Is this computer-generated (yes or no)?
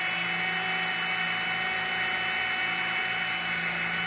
no